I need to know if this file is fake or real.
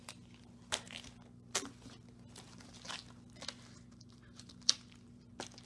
real